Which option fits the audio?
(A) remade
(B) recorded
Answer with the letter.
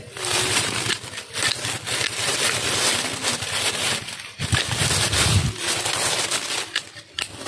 B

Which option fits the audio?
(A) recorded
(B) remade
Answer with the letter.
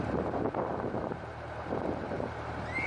B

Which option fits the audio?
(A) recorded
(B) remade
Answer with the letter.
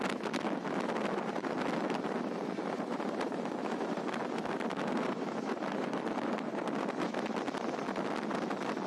A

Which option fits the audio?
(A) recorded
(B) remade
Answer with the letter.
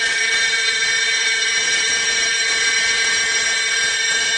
B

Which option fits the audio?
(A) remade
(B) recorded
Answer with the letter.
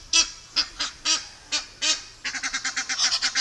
B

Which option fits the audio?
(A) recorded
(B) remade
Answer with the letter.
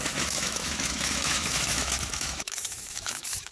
B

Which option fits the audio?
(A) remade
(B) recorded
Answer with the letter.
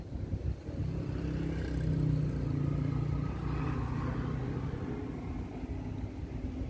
B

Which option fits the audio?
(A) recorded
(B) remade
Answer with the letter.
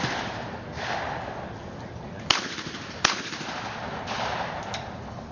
A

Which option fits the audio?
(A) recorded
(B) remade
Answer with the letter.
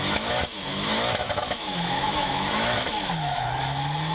B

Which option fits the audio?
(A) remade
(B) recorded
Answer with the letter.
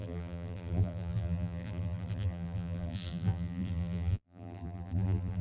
A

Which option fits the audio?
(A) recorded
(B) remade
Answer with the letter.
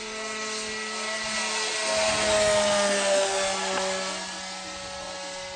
A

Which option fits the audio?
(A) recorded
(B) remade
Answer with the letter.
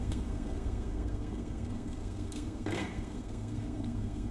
B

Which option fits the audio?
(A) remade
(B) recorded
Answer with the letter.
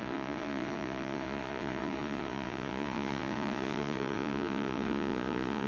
A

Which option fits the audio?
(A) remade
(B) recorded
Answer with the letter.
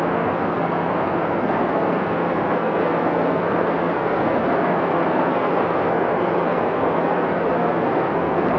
A